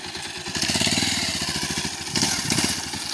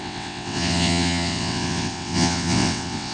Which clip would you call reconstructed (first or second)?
second